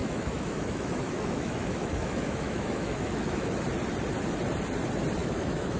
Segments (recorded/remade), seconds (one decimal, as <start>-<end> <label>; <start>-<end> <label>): 0.0-3.5 remade; 3.5-5.2 recorded; 5.2-5.8 remade